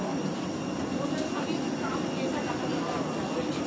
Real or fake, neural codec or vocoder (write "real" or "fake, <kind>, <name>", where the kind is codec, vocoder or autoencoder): real